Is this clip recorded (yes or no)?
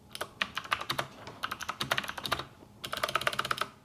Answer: yes